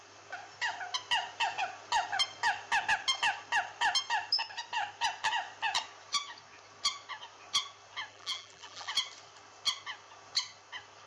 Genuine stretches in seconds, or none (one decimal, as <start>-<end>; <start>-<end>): 0.0-8.1; 8.9-11.1